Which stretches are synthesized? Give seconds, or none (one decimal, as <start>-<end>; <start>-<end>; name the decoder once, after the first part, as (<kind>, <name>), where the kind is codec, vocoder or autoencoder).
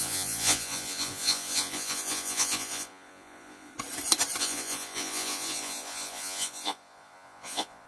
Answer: 0.0-3.7 (vocoder, Vocos); 4.4-7.9